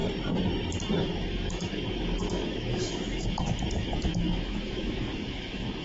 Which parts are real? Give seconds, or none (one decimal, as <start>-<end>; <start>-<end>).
0.0-1.0